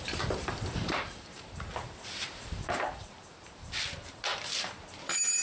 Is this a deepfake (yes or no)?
yes